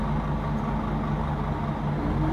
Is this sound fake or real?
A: real